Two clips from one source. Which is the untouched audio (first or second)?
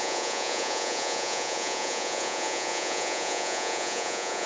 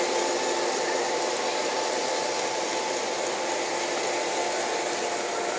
second